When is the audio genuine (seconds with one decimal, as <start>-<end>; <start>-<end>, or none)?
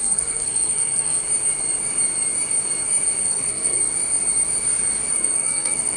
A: 1.2-3.2; 3.8-5.1